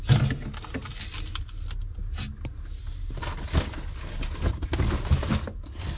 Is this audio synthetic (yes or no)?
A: no